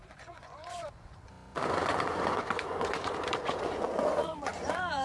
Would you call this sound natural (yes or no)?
no